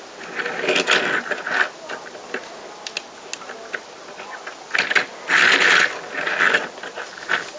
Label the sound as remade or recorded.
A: recorded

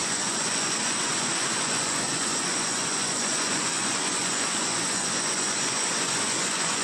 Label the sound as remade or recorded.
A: remade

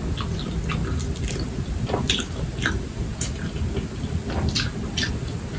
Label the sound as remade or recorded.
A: recorded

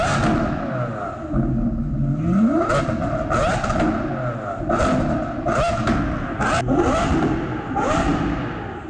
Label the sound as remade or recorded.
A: recorded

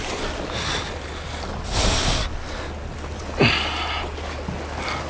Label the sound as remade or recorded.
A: recorded